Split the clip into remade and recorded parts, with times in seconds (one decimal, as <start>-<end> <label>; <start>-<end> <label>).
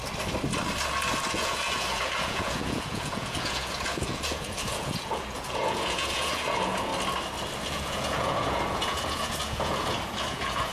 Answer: 0.0-1.1 recorded; 1.1-6.9 remade; 6.9-7.7 recorded; 7.7-10.7 remade